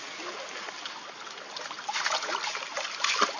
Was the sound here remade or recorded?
recorded